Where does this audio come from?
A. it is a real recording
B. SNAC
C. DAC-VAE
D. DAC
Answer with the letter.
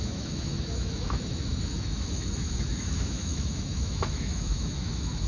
C